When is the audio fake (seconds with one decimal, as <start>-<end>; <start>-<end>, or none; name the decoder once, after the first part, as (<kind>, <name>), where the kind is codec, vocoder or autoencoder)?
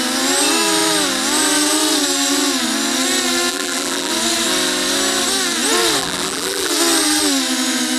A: 3.5-4.1 (vocoder, BigVGAN v2); 6.0-6.7